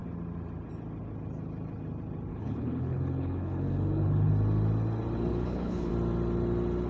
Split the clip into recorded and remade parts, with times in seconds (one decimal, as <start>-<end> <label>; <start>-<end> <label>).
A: 0.0-2.3 recorded; 2.3-4.3 remade; 4.3-5.3 recorded; 5.3-5.9 remade; 5.9-6.9 recorded